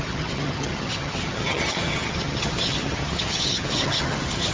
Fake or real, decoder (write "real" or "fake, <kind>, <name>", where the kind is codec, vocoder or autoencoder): fake, vocoder, HiFi-GAN